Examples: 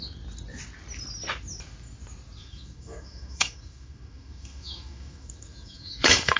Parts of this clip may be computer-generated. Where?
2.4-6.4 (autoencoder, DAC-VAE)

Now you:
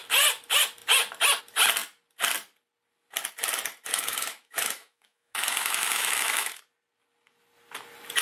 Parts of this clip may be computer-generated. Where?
3.9-6.6 (autoencoder, DAC-VAE)

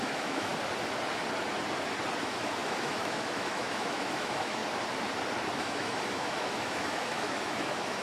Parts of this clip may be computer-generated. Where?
0.0-0.5 (autoencoder, DAC-VAE); 2.2-4.6; 5.6-8.0

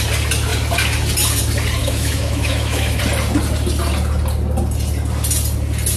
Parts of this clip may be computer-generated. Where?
1.8-3.0 (autoencoder, DAC-VAE)

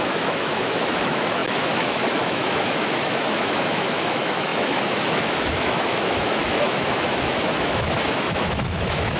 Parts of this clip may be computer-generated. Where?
0.0-9.2 (autoencoder, DAC-VAE)

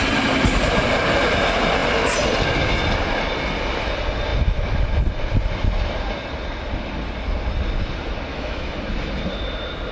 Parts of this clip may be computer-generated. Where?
8.3-8.8 (autoencoder, DAC-VAE)

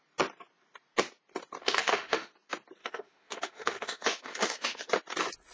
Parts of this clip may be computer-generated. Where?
1.6-2.3 (autoencoder, DAC-VAE); 2.8-4.9

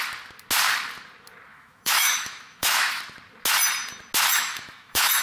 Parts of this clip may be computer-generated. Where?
1.5-3.0 (autoencoder, DAC-VAE); 4.3-5.2